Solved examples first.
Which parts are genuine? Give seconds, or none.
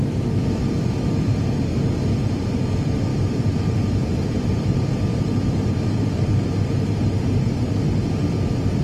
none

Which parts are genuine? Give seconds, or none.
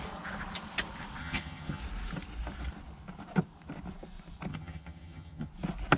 0.0-1.2; 1.8-4.5; 5.5-6.0